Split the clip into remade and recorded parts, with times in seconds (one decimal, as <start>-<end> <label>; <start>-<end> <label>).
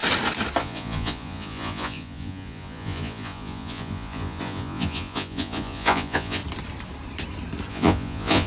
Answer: 0.0-0.6 recorded; 0.6-6.4 remade; 6.4-7.7 recorded; 7.7-8.5 remade